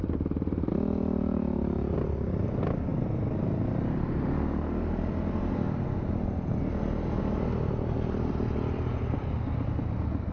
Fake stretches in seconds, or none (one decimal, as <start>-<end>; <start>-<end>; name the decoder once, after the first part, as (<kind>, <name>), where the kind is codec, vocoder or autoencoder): none